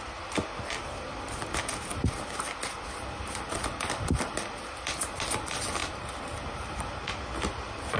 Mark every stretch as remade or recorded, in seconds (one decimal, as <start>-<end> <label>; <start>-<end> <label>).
0.0-8.0 recorded